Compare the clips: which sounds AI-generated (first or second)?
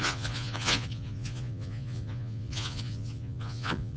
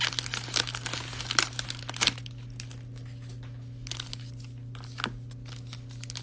first